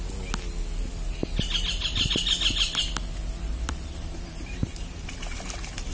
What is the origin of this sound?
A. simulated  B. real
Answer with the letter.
B